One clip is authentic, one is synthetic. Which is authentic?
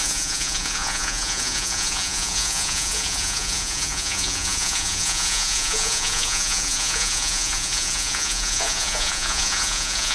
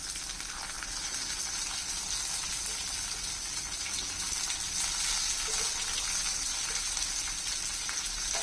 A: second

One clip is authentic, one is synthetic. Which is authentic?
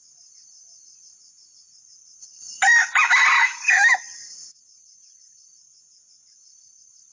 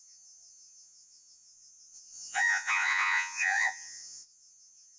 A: first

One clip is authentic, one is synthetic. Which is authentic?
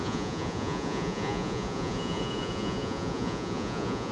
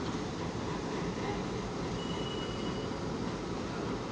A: second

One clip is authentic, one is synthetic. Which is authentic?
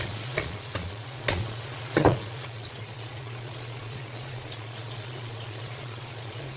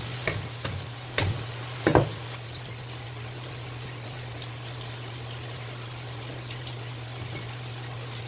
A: second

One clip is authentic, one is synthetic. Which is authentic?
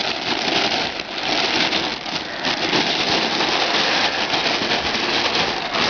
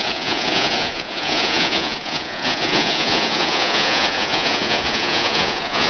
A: first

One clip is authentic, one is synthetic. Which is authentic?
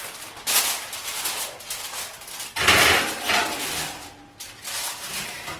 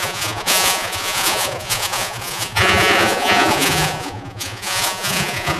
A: first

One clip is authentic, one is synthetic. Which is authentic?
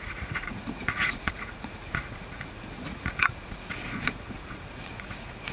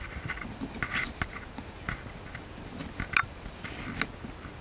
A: second